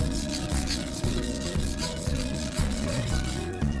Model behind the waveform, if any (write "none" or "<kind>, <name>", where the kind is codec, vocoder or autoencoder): vocoder, Vocos